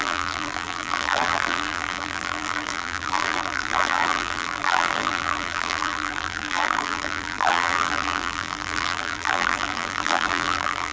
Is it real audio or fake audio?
fake